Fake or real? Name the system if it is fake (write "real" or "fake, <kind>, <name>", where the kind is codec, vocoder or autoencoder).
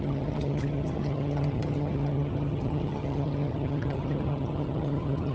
fake, vocoder, HiFi-GAN